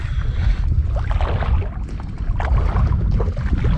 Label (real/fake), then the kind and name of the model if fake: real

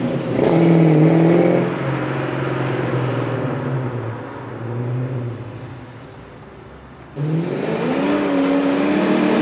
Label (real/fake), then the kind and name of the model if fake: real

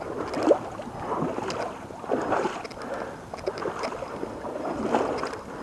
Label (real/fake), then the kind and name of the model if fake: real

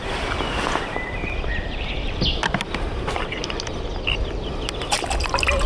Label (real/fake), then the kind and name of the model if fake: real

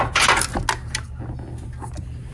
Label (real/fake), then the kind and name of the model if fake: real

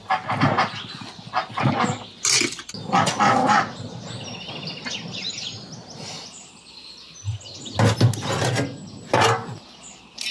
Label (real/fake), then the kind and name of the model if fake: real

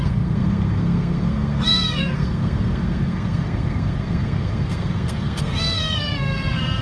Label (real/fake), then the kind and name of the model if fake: fake, codec, SNAC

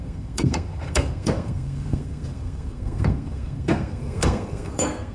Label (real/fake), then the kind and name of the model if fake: fake, codec, SNAC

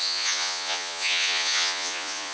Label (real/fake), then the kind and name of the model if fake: fake, vocoder, Vocos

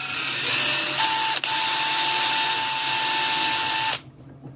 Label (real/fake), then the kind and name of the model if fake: real